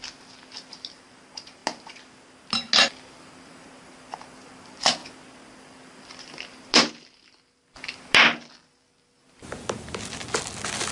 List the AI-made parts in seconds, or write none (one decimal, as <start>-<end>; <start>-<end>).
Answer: none